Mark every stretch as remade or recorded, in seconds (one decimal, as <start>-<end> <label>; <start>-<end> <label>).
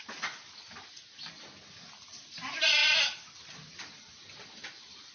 0.0-5.1 recorded